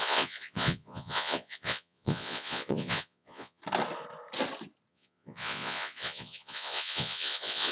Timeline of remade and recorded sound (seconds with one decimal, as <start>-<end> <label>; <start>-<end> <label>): 0.0-3.6 remade; 3.6-4.9 recorded; 4.9-7.7 remade